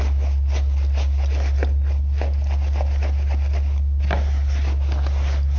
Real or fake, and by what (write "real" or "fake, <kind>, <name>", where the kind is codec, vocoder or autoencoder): real